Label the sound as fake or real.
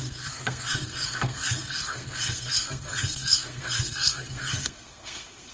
fake